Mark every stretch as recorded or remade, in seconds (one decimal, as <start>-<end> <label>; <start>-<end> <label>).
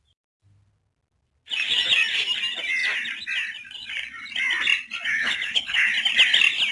0.0-5.1 recorded; 5.1-5.9 remade; 5.9-6.7 recorded